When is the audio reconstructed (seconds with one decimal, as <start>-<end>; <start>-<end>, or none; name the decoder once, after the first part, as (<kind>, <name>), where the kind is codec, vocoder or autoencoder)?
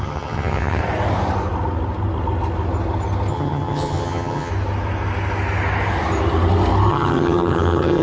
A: 0.0-0.8 (vocoder, HiFi-GAN); 3.3-4.5; 6.9-8.0